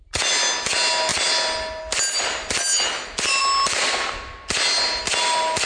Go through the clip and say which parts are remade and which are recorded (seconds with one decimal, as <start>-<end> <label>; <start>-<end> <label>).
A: 0.0-5.7 recorded